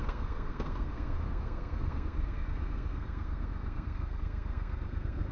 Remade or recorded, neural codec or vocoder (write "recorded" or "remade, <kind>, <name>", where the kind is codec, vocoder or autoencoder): remade, codec, SNAC